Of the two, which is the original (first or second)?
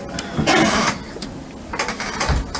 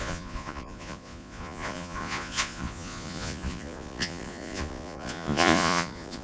first